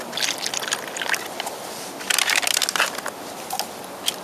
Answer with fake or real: real